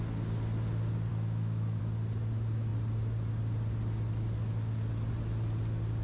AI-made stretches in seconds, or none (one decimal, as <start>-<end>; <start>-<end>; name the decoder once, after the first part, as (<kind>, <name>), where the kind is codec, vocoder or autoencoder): 1.1-1.8 (autoencoder, DAC-VAE)